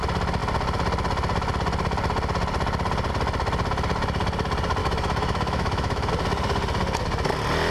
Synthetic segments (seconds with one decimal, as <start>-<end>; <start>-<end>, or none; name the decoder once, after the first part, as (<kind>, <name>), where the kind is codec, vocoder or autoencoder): 4.8-6.1 (autoencoder, DAC-VAE)